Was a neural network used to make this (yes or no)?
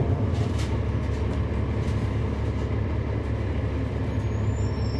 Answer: no